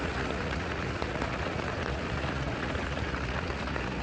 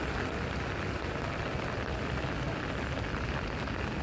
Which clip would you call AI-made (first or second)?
first